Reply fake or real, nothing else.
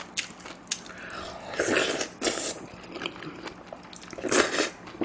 real